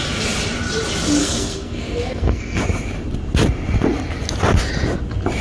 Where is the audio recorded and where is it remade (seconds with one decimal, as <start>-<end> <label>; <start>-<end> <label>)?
0.0-1.2 recorded; 1.2-2.6 remade; 2.6-5.4 recorded